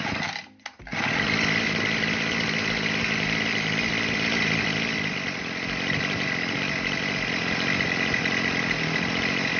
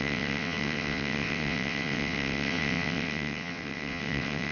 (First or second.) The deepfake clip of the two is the second